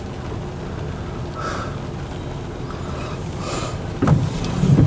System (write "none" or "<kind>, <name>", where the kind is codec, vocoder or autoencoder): none